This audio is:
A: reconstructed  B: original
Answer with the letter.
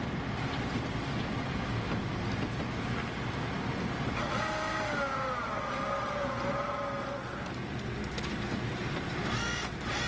B